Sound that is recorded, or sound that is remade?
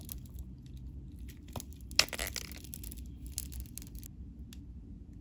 recorded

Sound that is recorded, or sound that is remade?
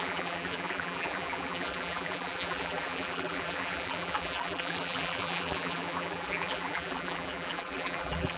remade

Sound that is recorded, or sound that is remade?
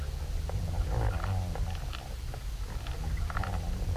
recorded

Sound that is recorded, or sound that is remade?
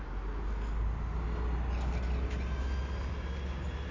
recorded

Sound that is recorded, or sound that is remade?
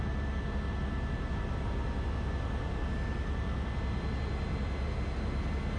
recorded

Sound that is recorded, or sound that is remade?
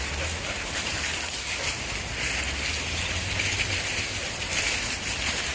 recorded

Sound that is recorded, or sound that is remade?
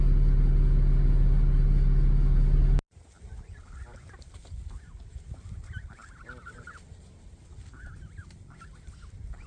recorded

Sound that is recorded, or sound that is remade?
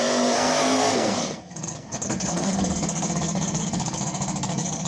remade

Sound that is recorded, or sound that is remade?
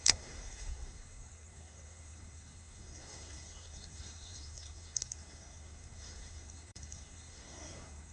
remade